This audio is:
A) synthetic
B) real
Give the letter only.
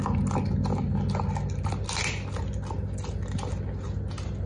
B